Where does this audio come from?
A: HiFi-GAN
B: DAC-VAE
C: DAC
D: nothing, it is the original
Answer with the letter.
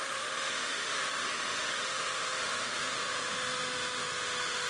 B